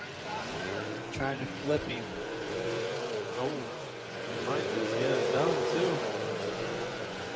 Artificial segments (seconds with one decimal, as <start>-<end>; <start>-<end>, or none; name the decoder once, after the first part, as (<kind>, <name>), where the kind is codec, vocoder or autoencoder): 0.0-7.4 (vocoder, Vocos)